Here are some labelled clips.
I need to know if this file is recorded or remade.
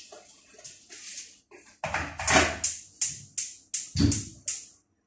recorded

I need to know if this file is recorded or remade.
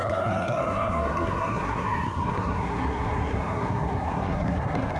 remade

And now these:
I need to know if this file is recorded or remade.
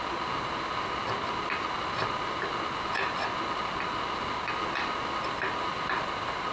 recorded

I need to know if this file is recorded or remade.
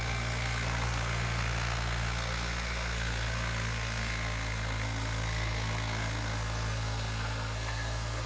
remade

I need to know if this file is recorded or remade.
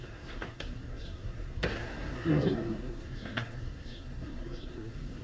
remade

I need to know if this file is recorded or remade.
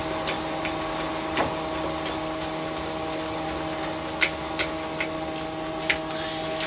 recorded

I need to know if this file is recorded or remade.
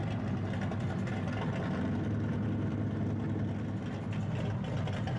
recorded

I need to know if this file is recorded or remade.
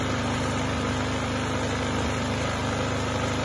recorded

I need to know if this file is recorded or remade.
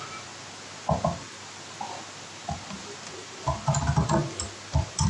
recorded